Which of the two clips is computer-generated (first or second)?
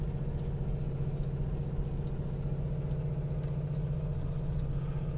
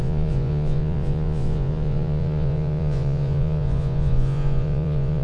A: second